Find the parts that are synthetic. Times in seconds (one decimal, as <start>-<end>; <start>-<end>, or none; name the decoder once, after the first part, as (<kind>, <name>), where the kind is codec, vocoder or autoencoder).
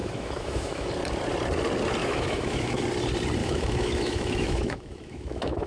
0.0-0.9 (autoencoder, DAC-VAE); 2.0-2.8; 3.4-5.7